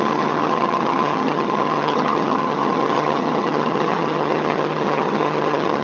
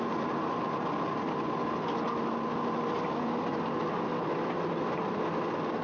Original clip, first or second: second